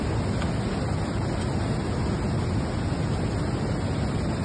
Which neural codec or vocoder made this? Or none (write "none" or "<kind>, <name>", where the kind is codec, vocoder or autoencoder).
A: none